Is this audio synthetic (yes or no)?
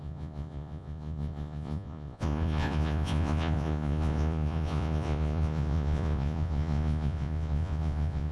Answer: yes